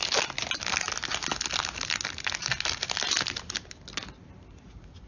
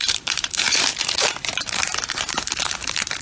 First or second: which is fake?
second